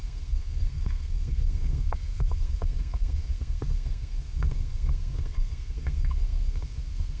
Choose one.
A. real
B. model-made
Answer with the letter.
B